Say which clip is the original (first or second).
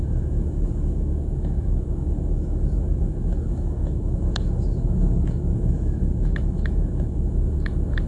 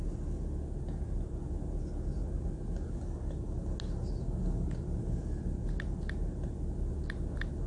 second